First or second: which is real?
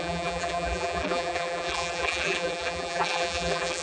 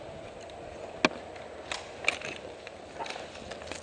second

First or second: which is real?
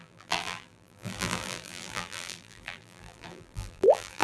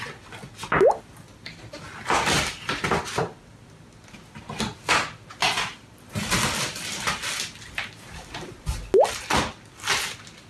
second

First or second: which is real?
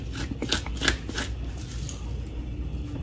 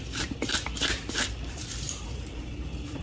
first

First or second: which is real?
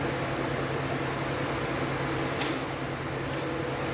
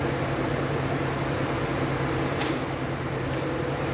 first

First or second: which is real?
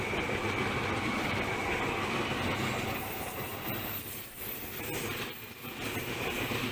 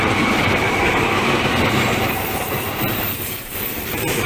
first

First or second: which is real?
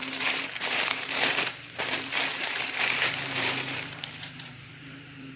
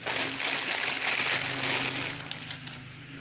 second